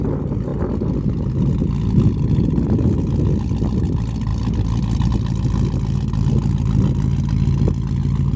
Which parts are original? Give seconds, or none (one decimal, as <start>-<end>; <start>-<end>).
0.0-8.4